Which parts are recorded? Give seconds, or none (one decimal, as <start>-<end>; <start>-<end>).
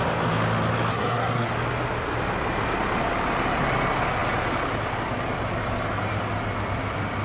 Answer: 0.0-0.9; 1.5-7.2